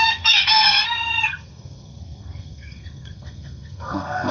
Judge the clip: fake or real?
fake